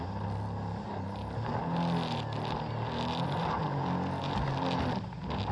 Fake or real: real